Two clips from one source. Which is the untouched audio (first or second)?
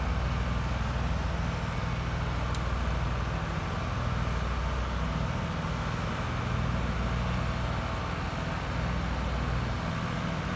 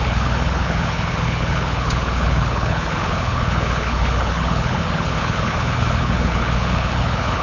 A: first